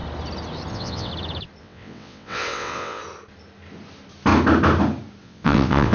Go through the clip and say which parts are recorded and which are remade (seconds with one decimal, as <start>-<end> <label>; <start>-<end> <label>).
0.0-0.7 recorded; 0.7-1.1 remade; 1.1-1.6 recorded; 1.6-3.0 remade; 3.0-5.2 recorded; 5.2-5.9 remade